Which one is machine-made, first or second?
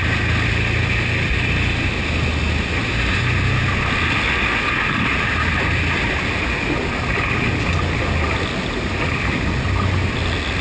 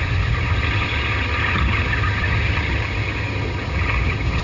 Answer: second